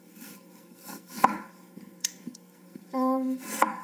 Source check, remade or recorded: remade